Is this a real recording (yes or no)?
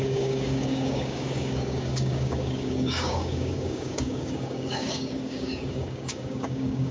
no